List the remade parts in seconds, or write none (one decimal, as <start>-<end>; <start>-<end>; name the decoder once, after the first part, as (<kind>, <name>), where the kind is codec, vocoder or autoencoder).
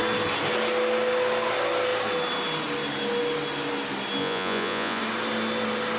4.2-5.0 (vocoder, Vocos)